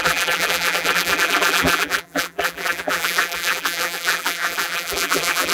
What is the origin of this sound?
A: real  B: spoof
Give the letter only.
B